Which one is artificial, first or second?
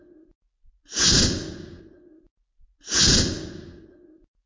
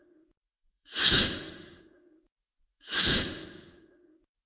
second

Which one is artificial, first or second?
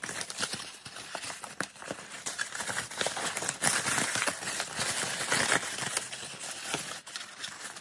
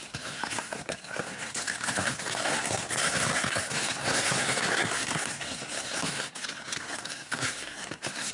second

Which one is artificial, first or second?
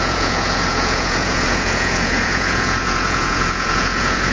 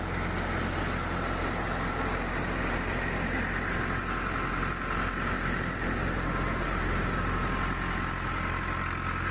first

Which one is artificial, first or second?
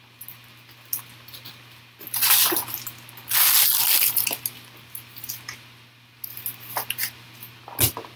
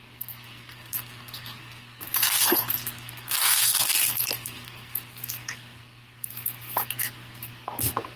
second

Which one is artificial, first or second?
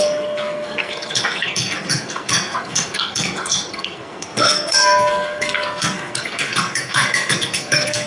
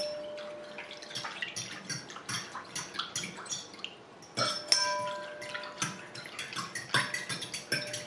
first